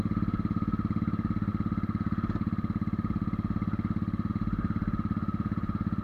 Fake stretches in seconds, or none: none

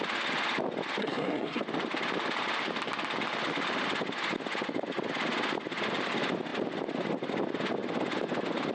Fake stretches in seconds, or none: 1.0-1.6